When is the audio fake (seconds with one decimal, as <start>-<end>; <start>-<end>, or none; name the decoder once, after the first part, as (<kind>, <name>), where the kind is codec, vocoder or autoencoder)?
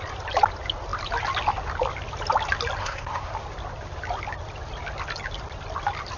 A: 2.8-3.3 (codec, SNAC)